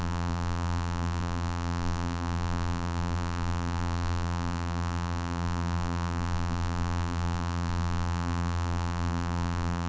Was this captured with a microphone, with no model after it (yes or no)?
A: no